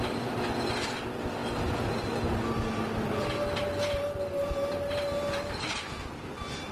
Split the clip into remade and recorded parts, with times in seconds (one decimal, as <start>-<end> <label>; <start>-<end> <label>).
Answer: 0.0-6.7 recorded